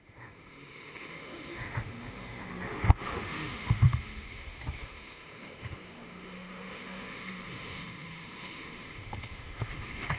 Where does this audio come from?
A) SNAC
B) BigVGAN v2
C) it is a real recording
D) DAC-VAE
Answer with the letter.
D